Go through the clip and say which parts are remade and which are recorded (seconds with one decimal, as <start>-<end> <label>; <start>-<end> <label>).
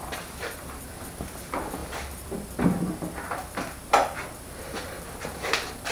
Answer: 0.0-5.9 recorded